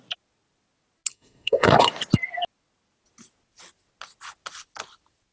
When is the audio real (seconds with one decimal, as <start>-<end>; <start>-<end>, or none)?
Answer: 0.0-1.1; 1.9-5.3

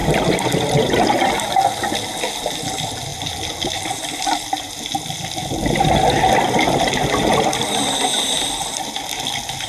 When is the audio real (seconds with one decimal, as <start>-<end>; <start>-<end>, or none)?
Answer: 0.0-9.7

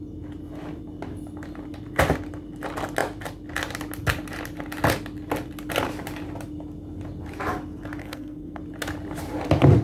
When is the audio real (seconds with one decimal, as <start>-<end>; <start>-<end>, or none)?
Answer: 0.0-8.0; 8.6-9.8